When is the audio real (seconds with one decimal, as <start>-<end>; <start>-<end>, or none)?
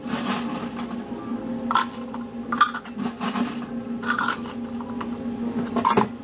0.0-6.2